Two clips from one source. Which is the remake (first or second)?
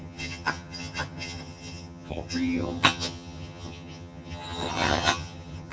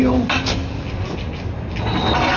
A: first